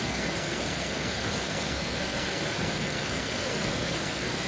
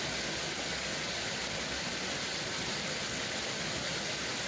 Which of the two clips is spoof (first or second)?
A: first